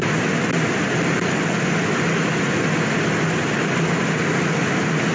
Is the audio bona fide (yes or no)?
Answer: yes